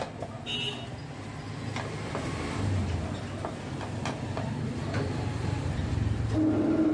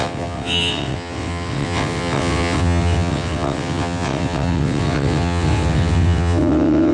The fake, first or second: second